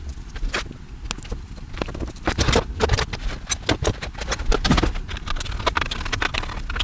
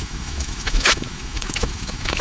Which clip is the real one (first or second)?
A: first